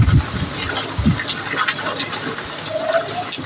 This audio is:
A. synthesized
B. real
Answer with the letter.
B